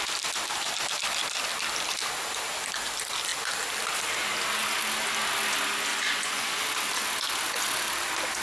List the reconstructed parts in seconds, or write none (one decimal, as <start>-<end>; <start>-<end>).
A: 5.9-6.6